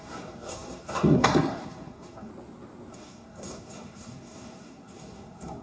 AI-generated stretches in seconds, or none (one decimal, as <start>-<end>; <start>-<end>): 0.0-2.3; 2.9-5.6